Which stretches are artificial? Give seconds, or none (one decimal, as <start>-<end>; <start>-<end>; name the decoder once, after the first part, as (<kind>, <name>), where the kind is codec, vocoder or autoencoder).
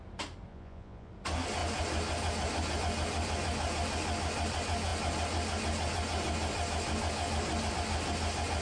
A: 0.5-1.1 (vocoder, Vocos)